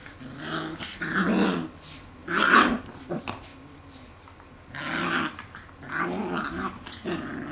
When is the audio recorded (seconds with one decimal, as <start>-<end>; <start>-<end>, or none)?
0.0-7.5